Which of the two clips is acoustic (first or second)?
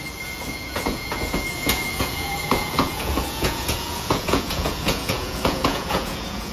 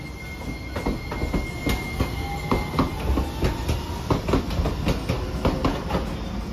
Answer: second